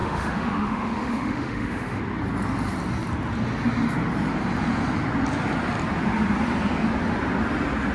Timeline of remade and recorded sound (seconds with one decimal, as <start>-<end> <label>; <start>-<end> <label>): 0.0-2.0 remade; 2.0-7.9 recorded